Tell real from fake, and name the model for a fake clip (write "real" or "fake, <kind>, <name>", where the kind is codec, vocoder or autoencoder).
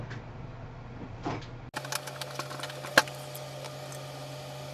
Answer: real